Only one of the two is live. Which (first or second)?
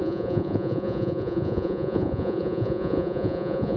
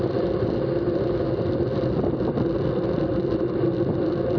second